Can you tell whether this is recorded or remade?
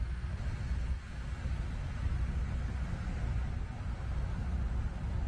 recorded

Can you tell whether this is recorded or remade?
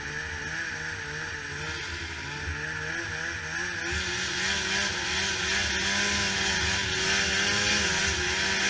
recorded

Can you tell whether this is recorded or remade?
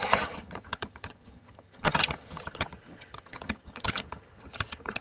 remade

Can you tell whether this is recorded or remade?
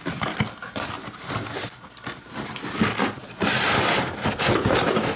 recorded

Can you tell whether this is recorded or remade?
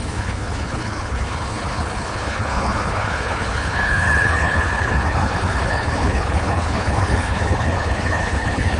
remade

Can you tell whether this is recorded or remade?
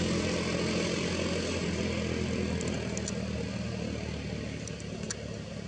recorded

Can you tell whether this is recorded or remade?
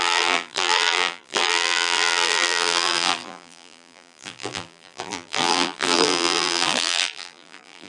remade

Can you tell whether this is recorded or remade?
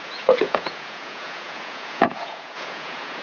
remade